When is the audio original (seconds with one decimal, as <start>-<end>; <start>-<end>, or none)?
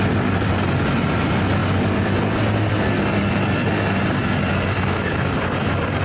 0.0-6.0